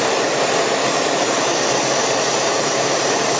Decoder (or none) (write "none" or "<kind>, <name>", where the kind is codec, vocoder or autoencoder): none